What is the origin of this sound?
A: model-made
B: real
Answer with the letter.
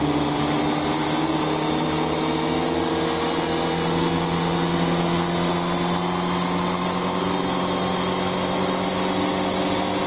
B